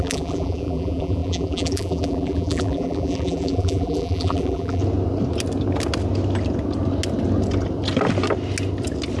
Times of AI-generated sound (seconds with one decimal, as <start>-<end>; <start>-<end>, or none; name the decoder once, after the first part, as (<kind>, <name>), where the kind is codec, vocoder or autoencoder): 0.0-4.8 (vocoder, BigVGAN v2)